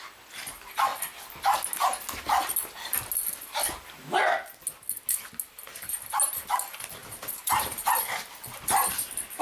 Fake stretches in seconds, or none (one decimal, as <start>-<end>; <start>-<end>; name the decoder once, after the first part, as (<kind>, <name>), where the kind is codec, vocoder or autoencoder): 7.0-7.8 (vocoder, BigVGAN v2)